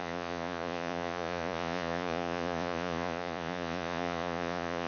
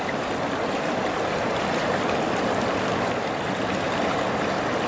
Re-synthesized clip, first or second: first